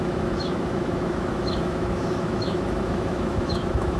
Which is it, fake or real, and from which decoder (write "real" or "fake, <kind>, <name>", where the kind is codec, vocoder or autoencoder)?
fake, autoencoder, DAC-VAE